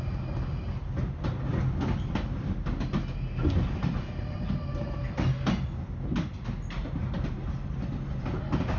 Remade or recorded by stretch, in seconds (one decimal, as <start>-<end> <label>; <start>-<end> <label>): 0.0-8.8 recorded